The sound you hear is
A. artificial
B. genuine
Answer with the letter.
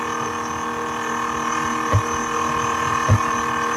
A